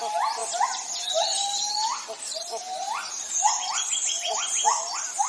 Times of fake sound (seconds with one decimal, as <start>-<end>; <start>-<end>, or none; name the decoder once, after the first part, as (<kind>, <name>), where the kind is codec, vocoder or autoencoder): none